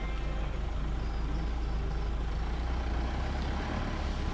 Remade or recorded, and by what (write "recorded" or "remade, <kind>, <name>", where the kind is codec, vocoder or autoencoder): recorded